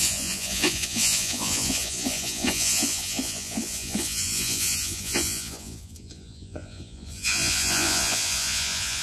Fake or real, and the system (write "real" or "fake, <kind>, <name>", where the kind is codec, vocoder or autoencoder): fake, vocoder, Vocos